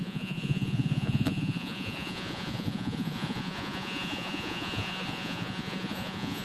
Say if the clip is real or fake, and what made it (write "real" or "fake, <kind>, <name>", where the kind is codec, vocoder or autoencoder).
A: fake, vocoder, Vocos